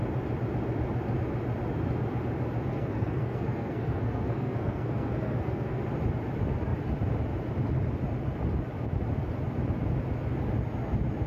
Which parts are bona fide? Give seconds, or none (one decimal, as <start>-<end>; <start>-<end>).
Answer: 0.0-2.7; 5.8-11.3